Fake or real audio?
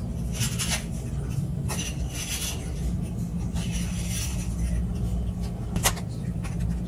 real